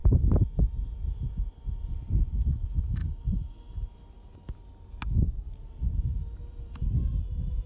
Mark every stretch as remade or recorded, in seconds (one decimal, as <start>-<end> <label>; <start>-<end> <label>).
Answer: 0.0-7.7 recorded